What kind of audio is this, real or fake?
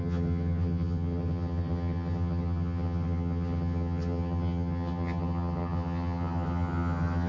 fake